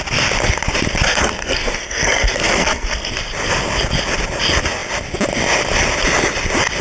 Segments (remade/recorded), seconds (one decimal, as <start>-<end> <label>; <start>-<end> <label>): 0.0-1.1 recorded; 1.1-3.1 remade; 3.1-6.8 recorded